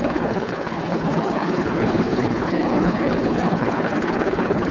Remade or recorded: remade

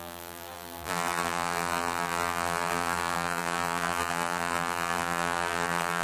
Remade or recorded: remade